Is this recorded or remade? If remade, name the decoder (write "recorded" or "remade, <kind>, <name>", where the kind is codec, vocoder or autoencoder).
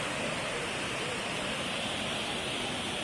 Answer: recorded